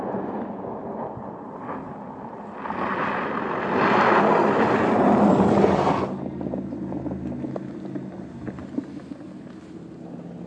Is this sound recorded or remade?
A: recorded